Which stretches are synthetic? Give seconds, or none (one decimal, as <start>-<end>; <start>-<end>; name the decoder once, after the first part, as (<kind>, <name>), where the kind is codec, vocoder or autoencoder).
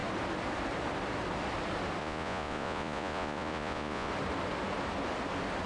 2.0-4.1 (vocoder, Vocos)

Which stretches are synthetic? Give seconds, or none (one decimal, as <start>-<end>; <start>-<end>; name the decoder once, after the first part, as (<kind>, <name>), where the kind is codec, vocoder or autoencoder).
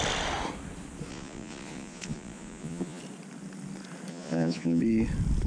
1.1-3.0 (vocoder, Vocos); 4.1-4.8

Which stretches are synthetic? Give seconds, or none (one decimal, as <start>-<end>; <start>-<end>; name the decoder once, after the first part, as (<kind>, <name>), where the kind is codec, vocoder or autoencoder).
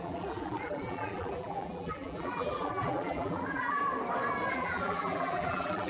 0.0-3.8 (vocoder, BigVGAN v2); 4.5-5.9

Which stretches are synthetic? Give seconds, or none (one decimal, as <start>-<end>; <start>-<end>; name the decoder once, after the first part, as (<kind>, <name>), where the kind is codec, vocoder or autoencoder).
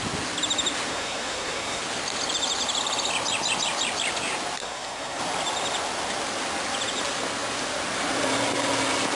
0.9-1.8 (codec, SNAC); 4.6-5.2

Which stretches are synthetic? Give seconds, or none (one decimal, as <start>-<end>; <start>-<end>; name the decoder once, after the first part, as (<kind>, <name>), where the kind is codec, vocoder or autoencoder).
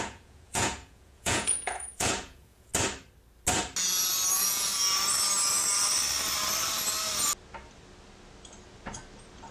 0.0-2.7 (vocoder, Vocos); 4.3-4.7